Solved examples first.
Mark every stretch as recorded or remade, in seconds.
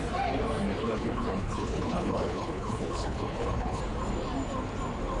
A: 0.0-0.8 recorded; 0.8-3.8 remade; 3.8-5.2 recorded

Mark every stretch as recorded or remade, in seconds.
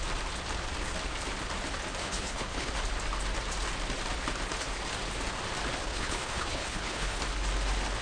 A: 0.0-2.0 recorded; 2.0-2.7 remade; 2.7-5.8 recorded; 5.8-7.2 remade; 7.2-8.0 recorded